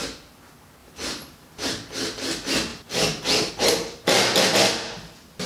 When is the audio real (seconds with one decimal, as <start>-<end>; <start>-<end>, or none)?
0.0-0.8; 1.7-2.7; 3.5-5.5

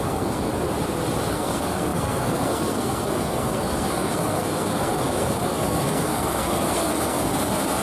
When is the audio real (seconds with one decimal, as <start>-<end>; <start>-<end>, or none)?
0.5-1.3

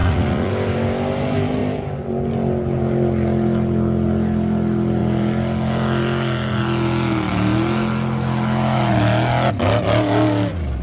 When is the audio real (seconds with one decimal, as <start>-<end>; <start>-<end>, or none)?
0.5-10.8

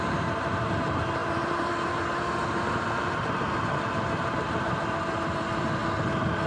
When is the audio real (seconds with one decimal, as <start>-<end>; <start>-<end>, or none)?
5.8-6.5